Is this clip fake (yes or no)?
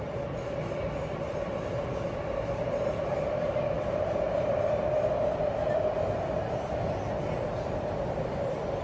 no